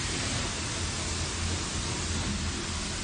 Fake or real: real